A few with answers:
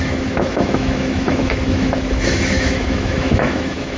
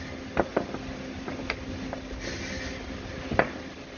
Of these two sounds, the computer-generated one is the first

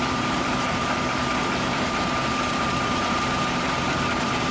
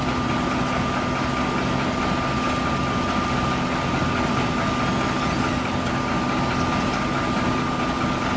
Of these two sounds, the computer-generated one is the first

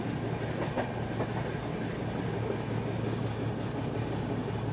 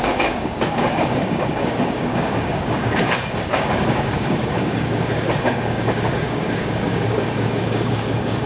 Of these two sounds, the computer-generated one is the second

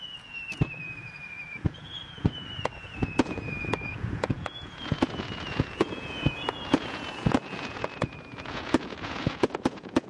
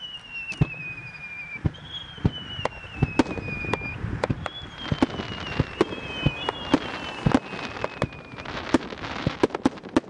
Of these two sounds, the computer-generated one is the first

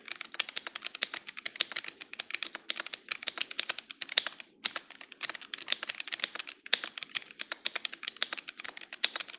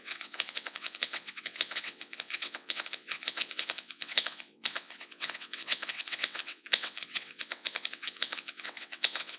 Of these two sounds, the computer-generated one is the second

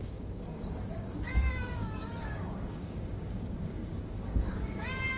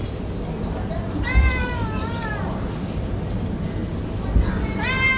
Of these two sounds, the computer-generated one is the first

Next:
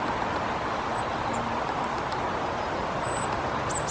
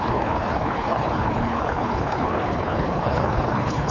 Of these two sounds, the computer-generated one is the second